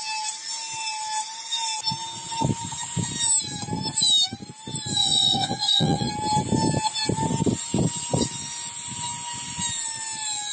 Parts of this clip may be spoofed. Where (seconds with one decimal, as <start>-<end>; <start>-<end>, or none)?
5.0-6.1